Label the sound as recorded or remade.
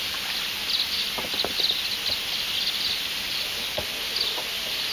recorded